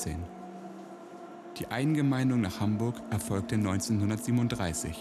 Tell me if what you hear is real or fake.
real